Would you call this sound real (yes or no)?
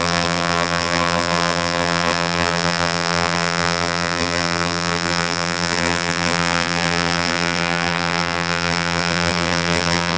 no